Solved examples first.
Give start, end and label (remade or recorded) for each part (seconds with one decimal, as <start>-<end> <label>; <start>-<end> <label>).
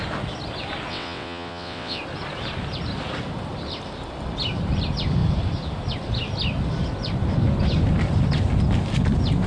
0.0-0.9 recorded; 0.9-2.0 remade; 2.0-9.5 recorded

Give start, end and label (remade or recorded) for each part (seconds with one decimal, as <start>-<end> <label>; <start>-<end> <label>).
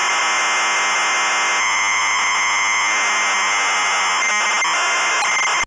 0.0-5.7 recorded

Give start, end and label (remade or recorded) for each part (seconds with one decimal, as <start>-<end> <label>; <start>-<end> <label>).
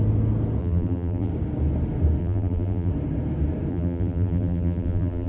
0.0-0.6 recorded; 0.6-1.3 remade; 1.3-2.2 recorded; 2.2-2.9 remade; 2.9-3.7 recorded; 3.7-5.3 remade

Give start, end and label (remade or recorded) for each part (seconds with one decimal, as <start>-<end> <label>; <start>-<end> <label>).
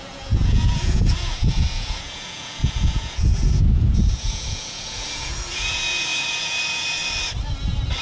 0.0-7.0 remade; 7.0-8.0 recorded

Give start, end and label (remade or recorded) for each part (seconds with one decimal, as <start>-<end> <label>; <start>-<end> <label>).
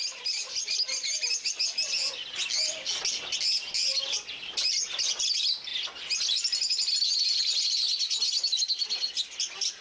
0.0-9.8 recorded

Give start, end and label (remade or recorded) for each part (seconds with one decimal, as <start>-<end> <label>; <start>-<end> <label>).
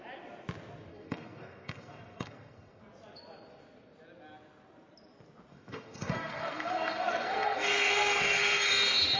0.0-0.9 recorded; 0.9-2.8 remade; 2.8-5.5 recorded; 5.5-8.7 remade; 8.7-9.2 recorded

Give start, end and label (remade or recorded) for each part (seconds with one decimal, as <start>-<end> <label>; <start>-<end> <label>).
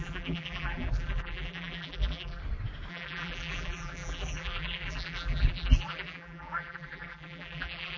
0.0-2.4 remade; 2.4-2.9 recorded; 2.9-8.0 remade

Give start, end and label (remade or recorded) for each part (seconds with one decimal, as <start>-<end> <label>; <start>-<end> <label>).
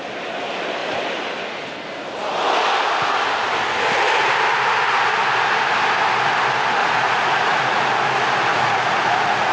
0.0-6.8 recorded; 6.8-7.8 remade; 7.8-8.5 recorded; 8.5-9.5 remade